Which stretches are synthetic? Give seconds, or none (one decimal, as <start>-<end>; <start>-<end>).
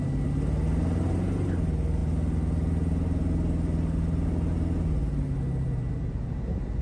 none